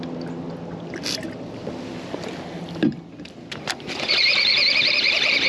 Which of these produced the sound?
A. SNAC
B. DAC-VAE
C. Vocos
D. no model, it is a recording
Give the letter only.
D